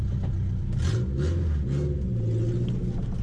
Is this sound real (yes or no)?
yes